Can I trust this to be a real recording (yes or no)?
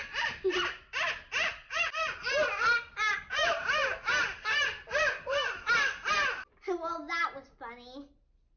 yes